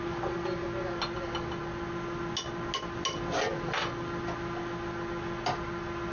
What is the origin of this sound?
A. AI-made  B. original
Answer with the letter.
B